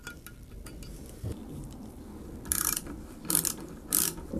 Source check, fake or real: fake